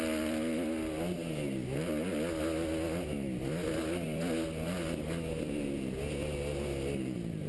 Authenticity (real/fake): real